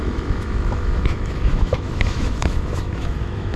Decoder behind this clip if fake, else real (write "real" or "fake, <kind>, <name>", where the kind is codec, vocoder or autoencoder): fake, autoencoder, DAC-VAE